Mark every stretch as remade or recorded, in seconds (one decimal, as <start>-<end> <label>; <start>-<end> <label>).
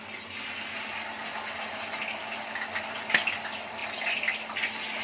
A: 0.0-5.0 recorded